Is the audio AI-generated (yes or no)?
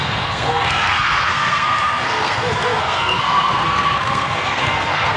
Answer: yes